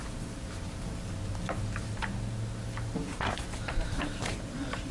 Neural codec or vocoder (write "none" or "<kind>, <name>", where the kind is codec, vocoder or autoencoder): none